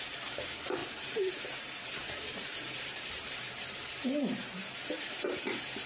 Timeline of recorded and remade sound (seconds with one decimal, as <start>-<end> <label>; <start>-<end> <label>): 0.0-5.9 remade